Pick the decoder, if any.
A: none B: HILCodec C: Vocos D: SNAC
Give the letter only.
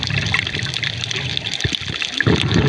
A